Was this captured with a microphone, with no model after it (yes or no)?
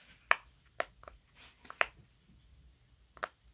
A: yes